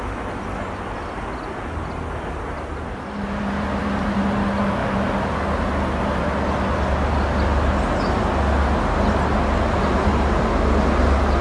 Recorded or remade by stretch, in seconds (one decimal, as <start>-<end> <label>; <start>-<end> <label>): 0.0-11.4 recorded